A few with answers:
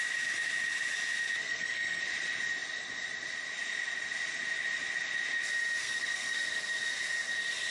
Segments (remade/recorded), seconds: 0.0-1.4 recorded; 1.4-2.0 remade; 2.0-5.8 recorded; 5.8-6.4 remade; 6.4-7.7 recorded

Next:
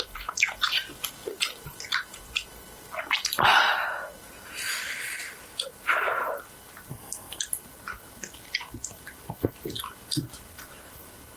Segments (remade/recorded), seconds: 0.0-6.9 recorded; 6.9-7.4 remade; 7.4-11.4 recorded

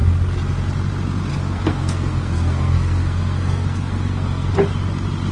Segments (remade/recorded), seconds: 0.0-1.3 recorded; 1.3-4.5 remade; 4.5-5.3 recorded

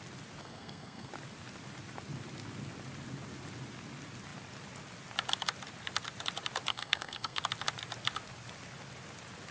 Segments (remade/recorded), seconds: 0.0-0.4 recorded; 0.4-1.1 remade; 1.1-6.7 recorded; 6.7-7.4 remade; 7.4-9.5 recorded